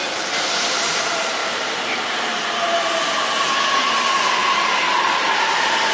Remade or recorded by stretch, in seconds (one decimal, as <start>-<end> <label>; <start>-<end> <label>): 0.0-4.4 remade; 4.4-5.2 recorded; 5.2-5.9 remade